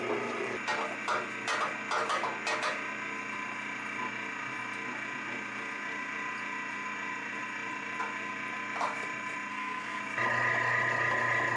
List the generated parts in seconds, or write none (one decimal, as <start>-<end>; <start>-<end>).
9.5-10.0